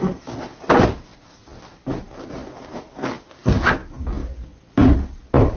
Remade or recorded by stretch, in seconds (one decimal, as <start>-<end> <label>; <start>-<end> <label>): 0.0-5.6 recorded